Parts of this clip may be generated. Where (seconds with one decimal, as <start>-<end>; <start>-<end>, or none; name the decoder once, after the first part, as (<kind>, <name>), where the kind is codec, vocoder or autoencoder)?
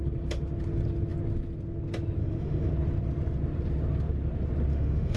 2.2-2.7 (autoencoder, DAC-VAE); 4.7-5.2